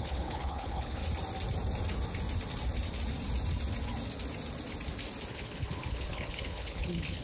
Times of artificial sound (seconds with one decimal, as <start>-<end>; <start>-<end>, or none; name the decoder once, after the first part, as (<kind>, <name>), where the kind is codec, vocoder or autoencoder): 0.0-1.0 (codec, HILCodec); 5.3-7.2